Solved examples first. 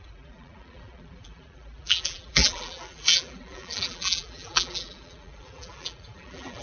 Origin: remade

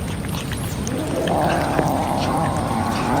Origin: recorded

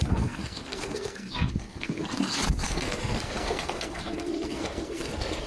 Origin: remade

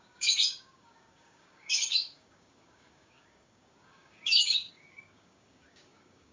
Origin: remade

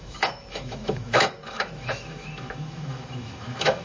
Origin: remade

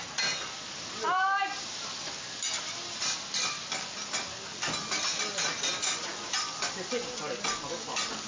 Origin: recorded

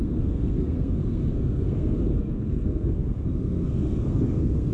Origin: remade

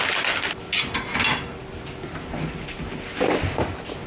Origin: recorded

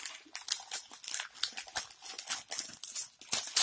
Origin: recorded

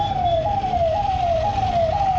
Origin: recorded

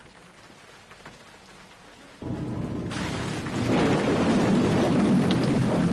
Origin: recorded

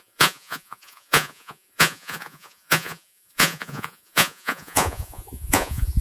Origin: remade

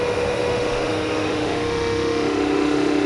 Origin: remade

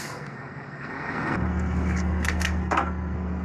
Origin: remade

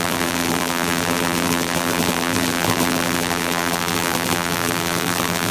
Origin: remade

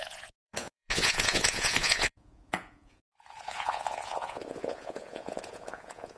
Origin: remade